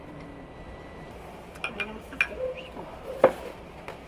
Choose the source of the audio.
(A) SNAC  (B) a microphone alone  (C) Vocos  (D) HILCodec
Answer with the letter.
B